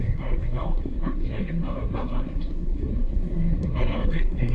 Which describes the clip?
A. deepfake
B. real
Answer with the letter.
A